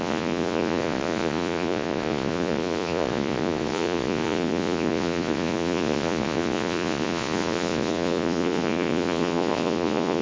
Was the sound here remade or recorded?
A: remade